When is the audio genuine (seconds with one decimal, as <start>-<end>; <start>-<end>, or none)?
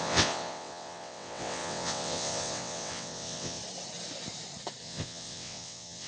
3.6-4.8